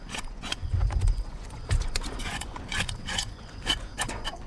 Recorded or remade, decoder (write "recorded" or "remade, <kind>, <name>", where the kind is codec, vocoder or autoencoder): remade, vocoder, Vocos